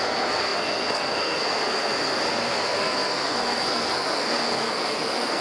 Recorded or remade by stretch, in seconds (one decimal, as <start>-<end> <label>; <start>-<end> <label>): 0.0-5.4 remade